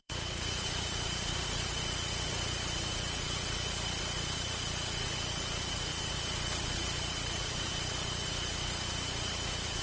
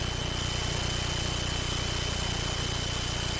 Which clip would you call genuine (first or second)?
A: second